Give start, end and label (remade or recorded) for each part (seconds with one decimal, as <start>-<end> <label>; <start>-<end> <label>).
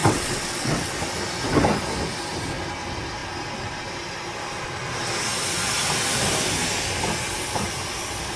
0.0-0.9 remade; 0.9-8.4 recorded